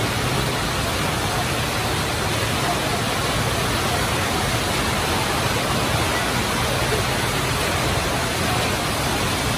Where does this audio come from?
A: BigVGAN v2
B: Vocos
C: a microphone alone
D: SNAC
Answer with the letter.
C